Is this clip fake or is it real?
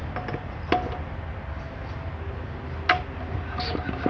real